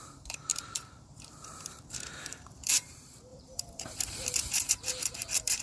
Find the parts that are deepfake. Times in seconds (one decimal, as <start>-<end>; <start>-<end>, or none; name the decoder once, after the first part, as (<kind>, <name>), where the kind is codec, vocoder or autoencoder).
0.0-5.6 (vocoder, BigVGAN v2)